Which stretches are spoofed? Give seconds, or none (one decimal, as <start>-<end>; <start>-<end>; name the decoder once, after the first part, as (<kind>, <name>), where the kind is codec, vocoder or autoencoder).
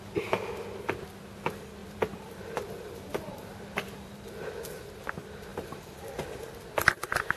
1.8-4.6 (vocoder, BigVGAN v2); 5.5-6.4